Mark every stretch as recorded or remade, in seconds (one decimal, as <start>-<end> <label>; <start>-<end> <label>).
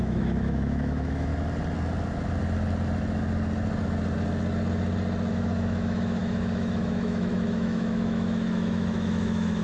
0.0-1.3 remade; 1.3-5.3 recorded; 5.3-9.6 remade